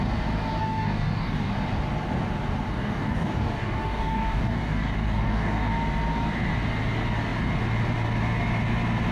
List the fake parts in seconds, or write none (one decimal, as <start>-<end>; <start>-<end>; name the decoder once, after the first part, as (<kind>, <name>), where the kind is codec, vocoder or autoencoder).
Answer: 0.6-1.5 (codec, DAC); 2.7-5.7